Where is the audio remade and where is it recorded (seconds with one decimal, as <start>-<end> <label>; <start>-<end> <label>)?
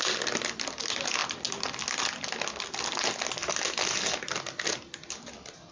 0.0-5.7 recorded